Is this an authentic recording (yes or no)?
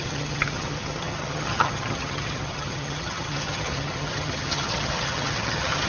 no